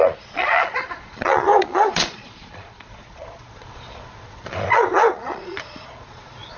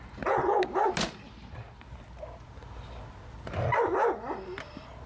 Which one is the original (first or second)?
second